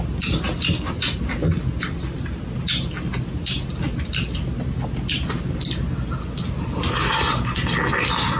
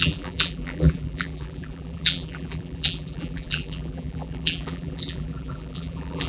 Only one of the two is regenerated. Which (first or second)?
second